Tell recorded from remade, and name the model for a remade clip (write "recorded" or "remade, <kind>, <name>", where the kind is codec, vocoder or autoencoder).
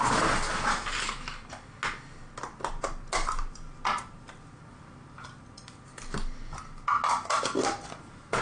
recorded